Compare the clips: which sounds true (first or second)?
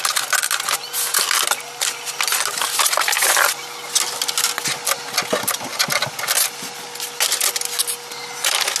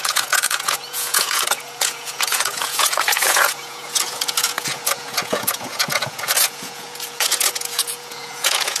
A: first